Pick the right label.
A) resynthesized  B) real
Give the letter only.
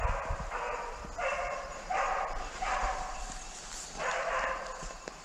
B